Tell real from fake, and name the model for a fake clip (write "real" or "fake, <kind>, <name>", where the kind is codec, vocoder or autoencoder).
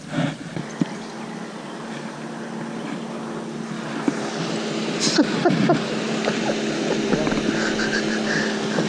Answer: real